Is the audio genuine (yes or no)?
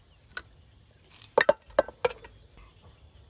yes